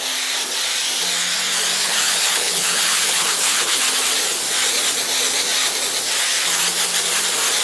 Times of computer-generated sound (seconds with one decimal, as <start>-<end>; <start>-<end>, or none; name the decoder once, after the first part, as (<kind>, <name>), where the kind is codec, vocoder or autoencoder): 1.8-3.8 (codec, HILCodec)